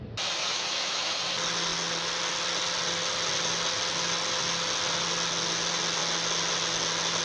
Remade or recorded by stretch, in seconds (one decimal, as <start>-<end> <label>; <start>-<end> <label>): 0.0-0.4 recorded; 0.4-1.2 remade; 1.2-7.2 recorded